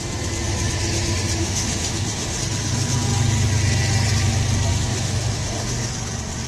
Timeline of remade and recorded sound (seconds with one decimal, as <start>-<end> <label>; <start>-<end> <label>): 0.0-1.4 recorded; 1.4-2.4 remade; 2.4-4.7 recorded; 4.7-5.9 remade; 5.9-6.5 recorded